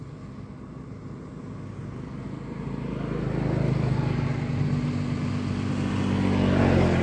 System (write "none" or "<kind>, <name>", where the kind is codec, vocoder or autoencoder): none